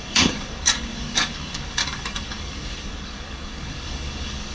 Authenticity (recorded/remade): remade